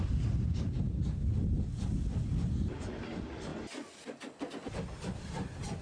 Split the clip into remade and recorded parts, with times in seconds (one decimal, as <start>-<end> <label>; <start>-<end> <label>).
0.0-5.8 recorded